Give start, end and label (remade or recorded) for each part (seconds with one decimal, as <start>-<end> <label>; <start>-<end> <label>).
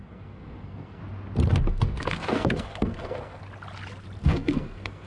0.0-1.0 remade; 1.0-1.7 recorded; 1.7-3.4 remade; 3.4-4.2 recorded; 4.2-5.1 remade